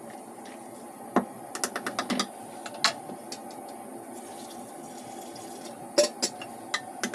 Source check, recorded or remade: recorded